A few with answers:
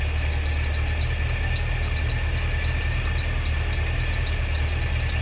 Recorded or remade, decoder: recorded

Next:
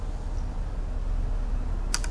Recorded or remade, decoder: recorded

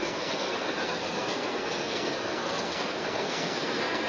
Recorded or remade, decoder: remade, codec, SNAC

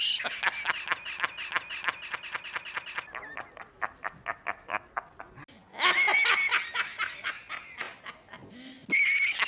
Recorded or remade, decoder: recorded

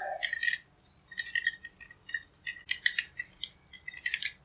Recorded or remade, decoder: recorded